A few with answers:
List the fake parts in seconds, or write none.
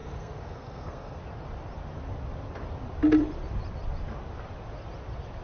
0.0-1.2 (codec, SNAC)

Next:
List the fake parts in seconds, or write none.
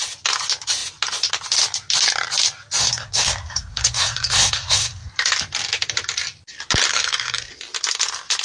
2.8-5.1 (codec, SNAC); 6.9-7.5